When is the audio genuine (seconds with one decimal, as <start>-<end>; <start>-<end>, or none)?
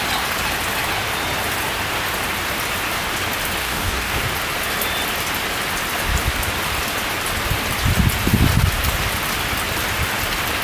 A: 0.0-3.6; 4.2-10.6